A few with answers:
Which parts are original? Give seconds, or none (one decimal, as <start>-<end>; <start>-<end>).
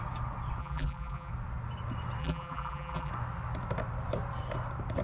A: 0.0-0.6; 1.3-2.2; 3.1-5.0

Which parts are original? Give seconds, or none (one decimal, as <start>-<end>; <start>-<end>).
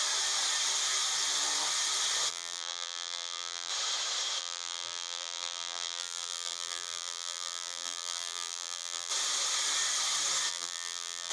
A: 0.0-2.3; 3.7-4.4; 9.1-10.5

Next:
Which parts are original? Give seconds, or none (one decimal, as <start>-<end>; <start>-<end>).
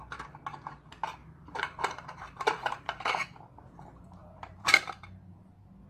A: 0.0-1.2; 3.1-4.2; 5.5-5.9